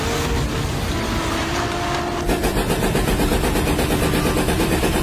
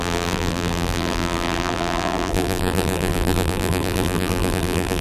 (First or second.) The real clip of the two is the first